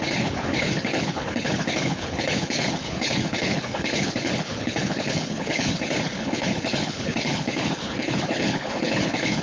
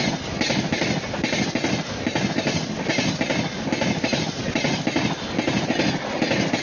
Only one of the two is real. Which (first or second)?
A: second